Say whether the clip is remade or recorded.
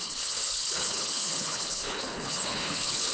remade